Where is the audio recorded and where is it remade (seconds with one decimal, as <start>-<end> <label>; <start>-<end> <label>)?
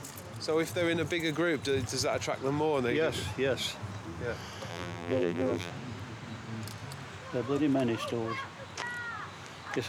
0.0-4.7 recorded; 4.7-5.7 remade; 5.7-9.9 recorded